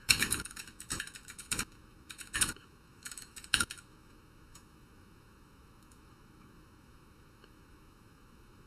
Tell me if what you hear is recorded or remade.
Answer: remade